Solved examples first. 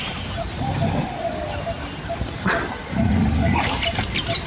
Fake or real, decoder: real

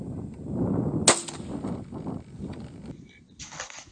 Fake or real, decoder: real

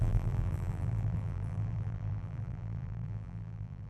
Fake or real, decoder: fake, vocoder, BigVGAN v2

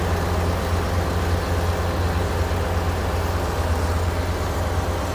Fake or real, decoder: real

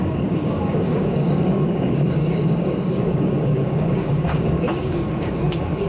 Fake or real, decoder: fake, codec, DAC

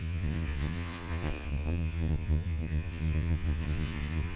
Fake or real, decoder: fake, vocoder, Vocos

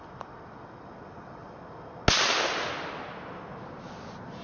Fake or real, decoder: real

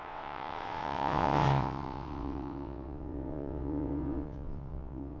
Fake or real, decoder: fake, vocoder, WaveNeXt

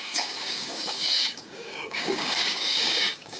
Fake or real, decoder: fake, codec, DAC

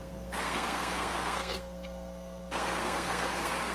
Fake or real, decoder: fake, codec, SNAC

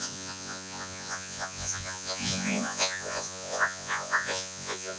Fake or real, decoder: fake, vocoder, Vocos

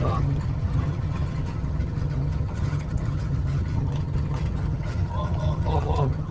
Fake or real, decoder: fake, vocoder, HiFi-GAN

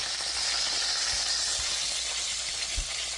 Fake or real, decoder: real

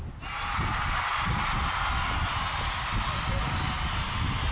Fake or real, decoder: real